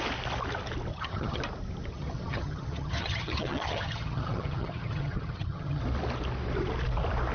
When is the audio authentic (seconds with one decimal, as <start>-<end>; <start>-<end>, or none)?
0.0-0.9; 1.4-1.9; 5.8-7.3